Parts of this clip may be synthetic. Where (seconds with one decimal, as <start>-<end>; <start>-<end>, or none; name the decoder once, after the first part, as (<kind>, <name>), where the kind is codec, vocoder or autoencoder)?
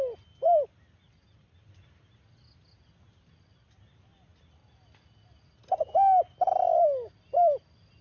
none